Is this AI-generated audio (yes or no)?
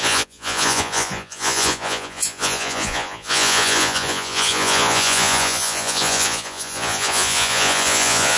yes